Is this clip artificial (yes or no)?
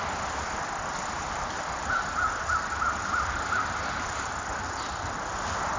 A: no